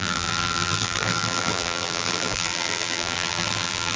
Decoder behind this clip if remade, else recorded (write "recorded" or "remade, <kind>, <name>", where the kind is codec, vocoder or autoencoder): remade, vocoder, BigVGAN v2